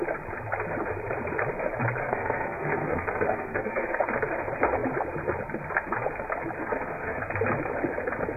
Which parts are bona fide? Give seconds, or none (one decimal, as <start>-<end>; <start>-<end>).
0.0-2.0; 4.0-6.6; 7.2-8.4